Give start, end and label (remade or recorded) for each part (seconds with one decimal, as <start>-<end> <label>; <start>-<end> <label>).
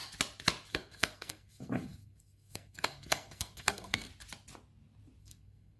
0.0-0.7 recorded; 0.7-4.1 remade; 4.1-5.2 recorded; 5.2-5.8 remade